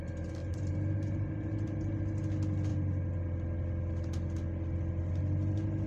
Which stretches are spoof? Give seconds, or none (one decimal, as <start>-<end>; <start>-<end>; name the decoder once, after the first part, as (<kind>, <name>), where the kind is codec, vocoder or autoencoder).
0.4-2.0 (vocoder, BigVGAN v2)